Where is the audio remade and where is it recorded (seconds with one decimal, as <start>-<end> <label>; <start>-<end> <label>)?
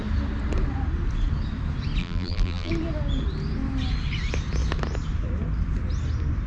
0.0-2.0 recorded; 2.0-2.7 remade; 2.7-6.5 recorded